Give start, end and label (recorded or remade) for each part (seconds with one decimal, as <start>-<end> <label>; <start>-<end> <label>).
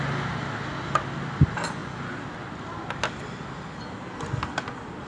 0.0-5.1 recorded